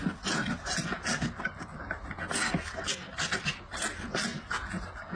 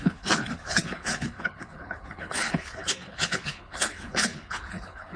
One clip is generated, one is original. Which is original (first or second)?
first